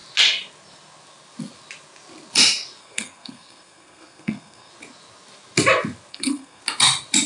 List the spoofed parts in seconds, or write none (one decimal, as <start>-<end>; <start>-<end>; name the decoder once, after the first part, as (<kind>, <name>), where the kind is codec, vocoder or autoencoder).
2.8-4.7 (codec, SNAC); 6.1-6.6